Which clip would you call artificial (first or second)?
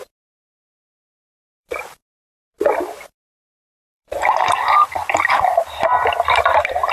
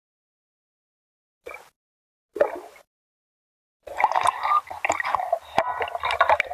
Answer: first